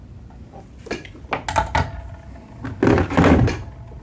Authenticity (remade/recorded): recorded